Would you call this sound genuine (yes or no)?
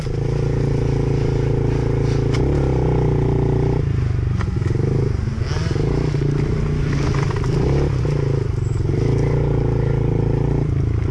yes